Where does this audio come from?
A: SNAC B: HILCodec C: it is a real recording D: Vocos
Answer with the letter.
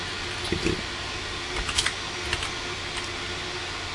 C